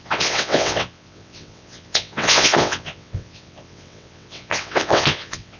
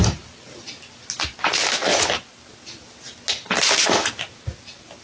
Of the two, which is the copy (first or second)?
first